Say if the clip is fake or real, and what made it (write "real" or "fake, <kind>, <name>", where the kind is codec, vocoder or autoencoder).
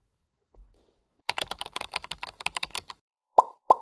fake, codec, DAC